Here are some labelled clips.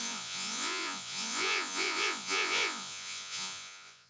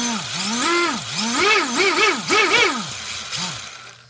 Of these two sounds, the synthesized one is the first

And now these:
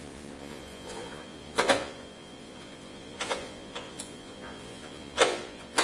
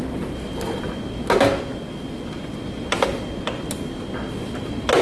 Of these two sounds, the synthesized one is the first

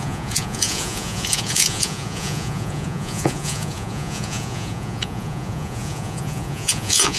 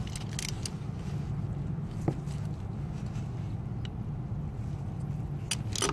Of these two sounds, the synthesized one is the first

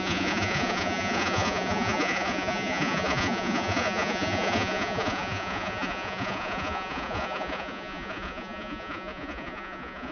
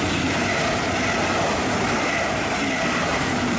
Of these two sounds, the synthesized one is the first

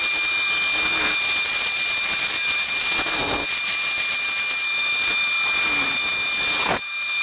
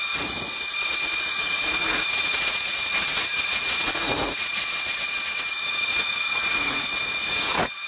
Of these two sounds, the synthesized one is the second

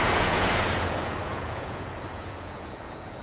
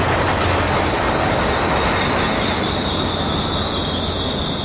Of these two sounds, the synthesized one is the first